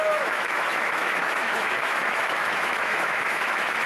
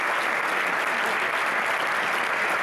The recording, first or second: second